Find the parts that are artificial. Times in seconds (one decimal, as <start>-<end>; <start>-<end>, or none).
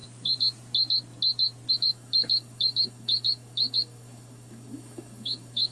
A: 1.7-5.7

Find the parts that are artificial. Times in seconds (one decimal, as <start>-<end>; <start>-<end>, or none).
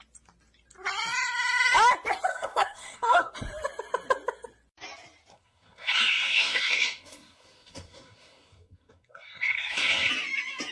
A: 2.3-3.3; 5.3-10.1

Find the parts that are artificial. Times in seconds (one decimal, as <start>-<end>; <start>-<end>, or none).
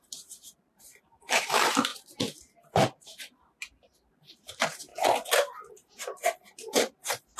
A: 0.0-1.9; 3.0-4.9; 5.7-7.4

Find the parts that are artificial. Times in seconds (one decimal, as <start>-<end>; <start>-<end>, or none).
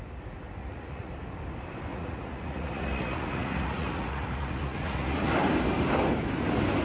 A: 0.6-1.1; 1.9-5.3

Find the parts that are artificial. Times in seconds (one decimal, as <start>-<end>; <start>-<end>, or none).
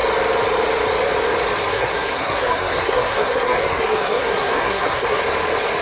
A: 1.7-5.2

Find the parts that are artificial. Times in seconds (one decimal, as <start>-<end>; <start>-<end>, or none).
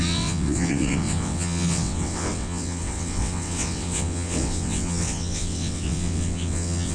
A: 0.0-6.9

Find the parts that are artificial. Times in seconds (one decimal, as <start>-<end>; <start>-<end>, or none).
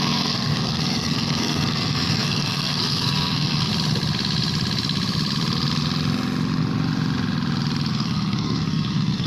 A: 0.0-3.7; 7.9-9.3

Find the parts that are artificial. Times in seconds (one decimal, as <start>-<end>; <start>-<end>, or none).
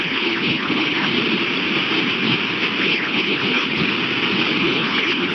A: 0.0-1.1; 2.8-3.8; 4.6-5.3